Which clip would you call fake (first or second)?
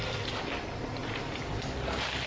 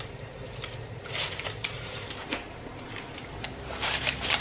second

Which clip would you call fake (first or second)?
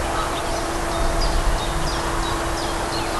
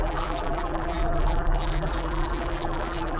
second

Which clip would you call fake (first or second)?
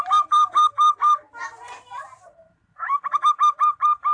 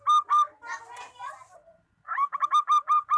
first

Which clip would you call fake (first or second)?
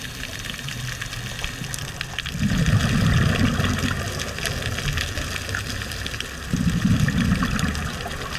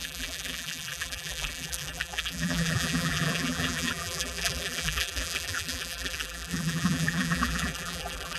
second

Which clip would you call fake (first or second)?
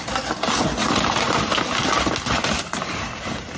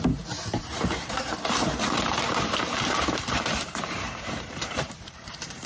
second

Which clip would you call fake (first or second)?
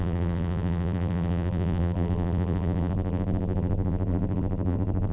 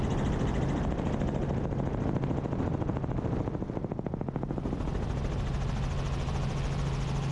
first